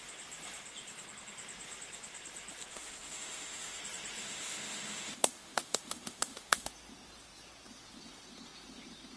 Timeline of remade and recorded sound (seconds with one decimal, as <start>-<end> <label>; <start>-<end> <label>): 0.0-2.7 recorded; 2.7-3.8 remade; 3.8-4.2 recorded; 4.2-6.7 remade; 6.7-9.2 recorded